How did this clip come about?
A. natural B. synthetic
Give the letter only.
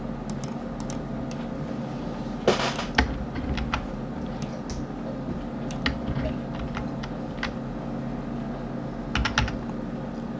A